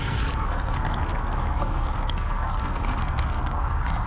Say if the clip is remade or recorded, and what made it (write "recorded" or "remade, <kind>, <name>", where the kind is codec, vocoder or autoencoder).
remade, codec, SNAC